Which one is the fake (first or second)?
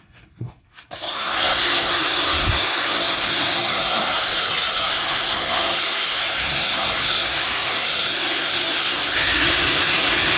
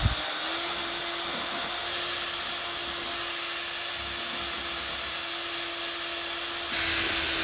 first